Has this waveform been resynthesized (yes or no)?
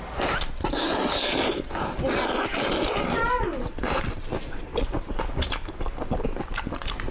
no